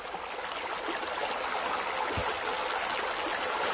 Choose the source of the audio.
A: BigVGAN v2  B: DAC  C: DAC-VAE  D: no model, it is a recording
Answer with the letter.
D